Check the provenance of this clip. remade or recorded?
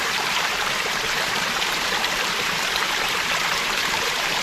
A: remade